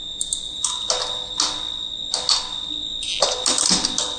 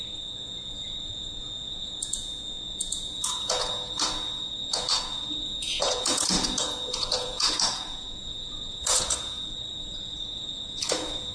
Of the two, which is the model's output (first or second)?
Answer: second